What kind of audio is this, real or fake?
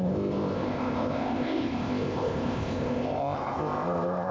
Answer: fake